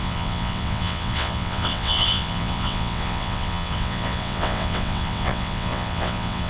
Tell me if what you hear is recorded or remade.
remade